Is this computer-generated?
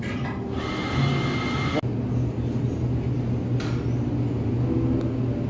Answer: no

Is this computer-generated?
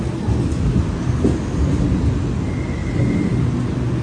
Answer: no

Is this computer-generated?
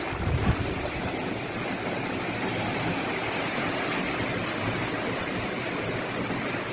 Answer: no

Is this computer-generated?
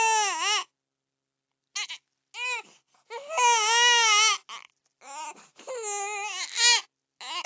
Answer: no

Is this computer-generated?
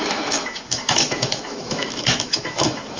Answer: yes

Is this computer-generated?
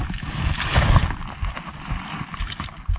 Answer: no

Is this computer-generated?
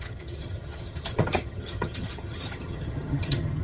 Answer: yes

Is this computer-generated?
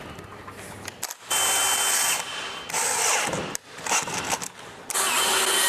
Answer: no